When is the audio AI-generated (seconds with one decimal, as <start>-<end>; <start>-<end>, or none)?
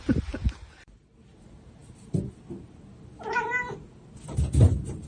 none